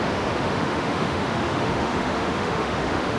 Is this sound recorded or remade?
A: remade